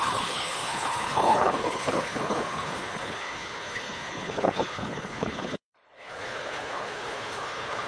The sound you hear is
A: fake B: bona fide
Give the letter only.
A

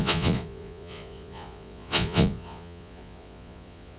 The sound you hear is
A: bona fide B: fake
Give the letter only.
B